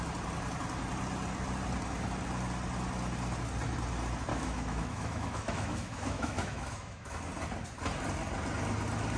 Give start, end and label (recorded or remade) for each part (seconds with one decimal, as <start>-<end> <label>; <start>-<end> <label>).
0.0-4.3 recorded; 4.3-7.2 remade; 7.2-9.2 recorded